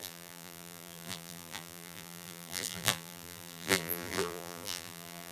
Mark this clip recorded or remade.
remade